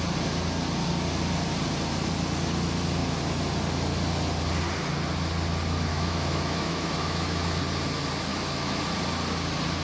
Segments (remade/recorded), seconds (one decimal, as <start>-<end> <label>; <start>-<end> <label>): 0.0-5.9 recorded; 5.9-7.6 remade; 7.6-8.3 recorded; 8.3-8.8 remade; 8.8-9.8 recorded